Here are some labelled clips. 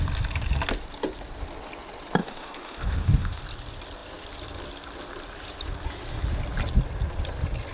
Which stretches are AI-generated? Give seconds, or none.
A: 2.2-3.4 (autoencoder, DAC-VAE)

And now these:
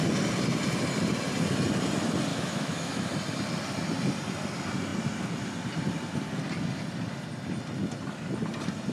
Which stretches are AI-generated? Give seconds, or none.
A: 2.3-2.9 (autoencoder, DAC-VAE)